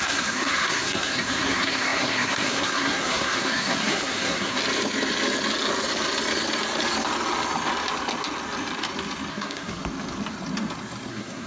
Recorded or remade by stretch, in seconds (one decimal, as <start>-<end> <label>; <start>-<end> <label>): 0.0-4.6 remade; 4.6-9.3 recorded; 9.3-9.8 remade; 9.8-11.1 recorded; 11.1-11.5 remade